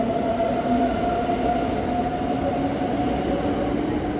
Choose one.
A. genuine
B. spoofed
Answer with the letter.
A